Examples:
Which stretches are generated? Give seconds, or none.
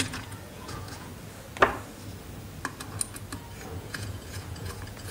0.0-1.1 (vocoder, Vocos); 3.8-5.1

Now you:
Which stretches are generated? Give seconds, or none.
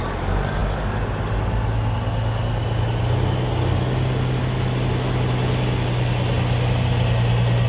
none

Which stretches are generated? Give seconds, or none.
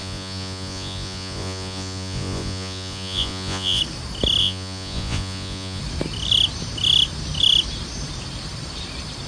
0.0-3.8 (vocoder, Vocos); 4.4-5.8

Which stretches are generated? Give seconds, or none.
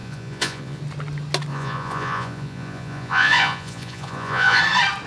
0.0-0.8 (vocoder, Vocos); 1.5-4.6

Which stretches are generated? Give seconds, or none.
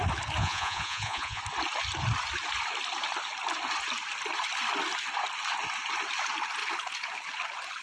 0.4-1.4 (vocoder, Vocos)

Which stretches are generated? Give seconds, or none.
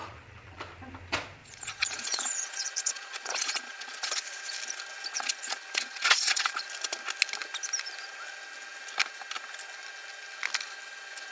0.0-0.6 (vocoder, Vocos); 1.4-4.4; 5.1-6.6